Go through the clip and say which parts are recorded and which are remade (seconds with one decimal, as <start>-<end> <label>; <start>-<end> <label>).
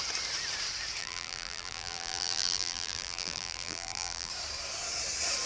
0.0-1.0 recorded; 1.0-4.3 remade; 4.3-5.5 recorded